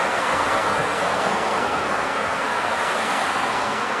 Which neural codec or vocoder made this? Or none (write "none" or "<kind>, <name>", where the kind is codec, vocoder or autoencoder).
codec, SNAC